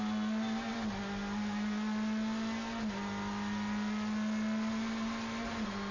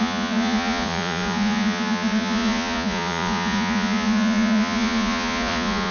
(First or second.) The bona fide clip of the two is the first